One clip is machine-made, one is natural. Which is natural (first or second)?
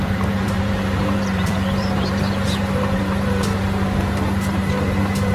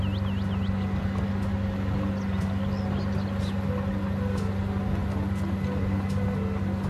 second